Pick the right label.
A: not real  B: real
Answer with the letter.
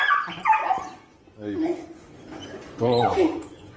A